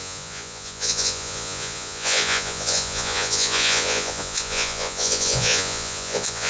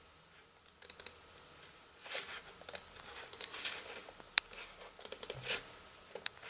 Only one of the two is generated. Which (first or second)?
first